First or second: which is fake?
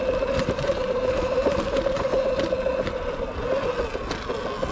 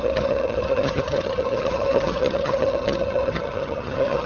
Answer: second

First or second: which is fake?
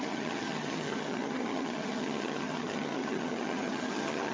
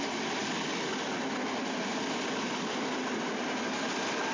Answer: first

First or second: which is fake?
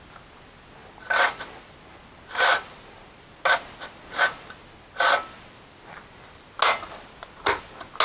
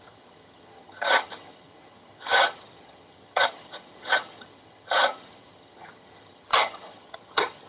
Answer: second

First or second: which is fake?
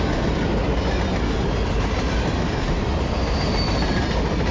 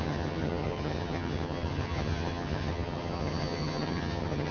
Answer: second